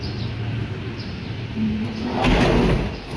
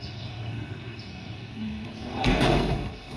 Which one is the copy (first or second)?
second